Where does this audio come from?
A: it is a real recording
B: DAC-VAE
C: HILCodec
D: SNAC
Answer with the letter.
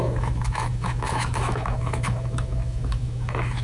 B